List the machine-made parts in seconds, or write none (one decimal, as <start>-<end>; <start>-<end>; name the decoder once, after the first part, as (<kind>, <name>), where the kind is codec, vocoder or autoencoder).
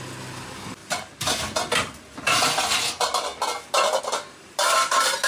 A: none